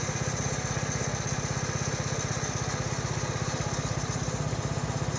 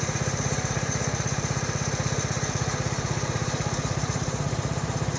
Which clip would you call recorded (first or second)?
first